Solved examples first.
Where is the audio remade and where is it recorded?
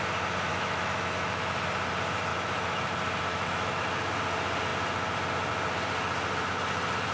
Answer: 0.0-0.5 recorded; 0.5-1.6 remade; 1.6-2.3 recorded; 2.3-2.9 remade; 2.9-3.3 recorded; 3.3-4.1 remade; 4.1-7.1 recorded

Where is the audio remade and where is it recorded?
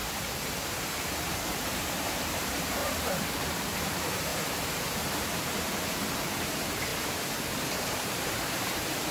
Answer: 0.0-0.7 recorded; 0.7-6.9 remade; 6.9-7.4 recorded; 7.4-9.1 remade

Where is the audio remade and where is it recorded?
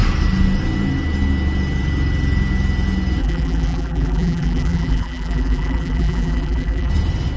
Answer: 0.0-3.2 recorded; 3.2-6.9 remade; 6.9-7.4 recorded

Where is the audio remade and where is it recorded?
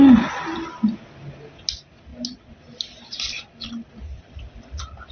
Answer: 0.0-5.1 recorded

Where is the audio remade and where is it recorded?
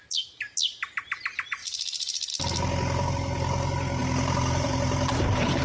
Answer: 0.0-1.6 recorded; 1.6-2.3 remade; 2.3-4.0 recorded; 4.0-5.6 remade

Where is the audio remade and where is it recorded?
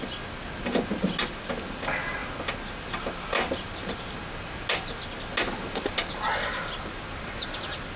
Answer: 0.0-8.0 recorded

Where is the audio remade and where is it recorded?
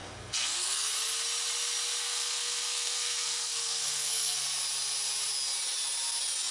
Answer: 0.0-0.9 remade; 0.9-2.0 recorded; 2.0-4.4 remade; 4.4-6.5 recorded